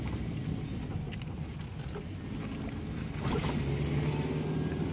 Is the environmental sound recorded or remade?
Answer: recorded